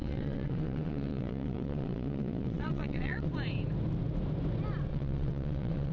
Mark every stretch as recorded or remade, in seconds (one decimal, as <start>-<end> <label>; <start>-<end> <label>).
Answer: 0.0-3.3 remade; 3.3-4.9 recorded; 4.9-5.9 remade